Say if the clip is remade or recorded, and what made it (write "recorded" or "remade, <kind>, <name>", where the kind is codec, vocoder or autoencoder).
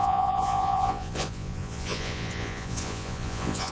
remade, vocoder, Vocos